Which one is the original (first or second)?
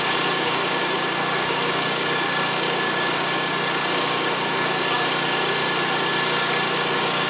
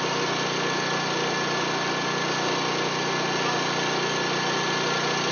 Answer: second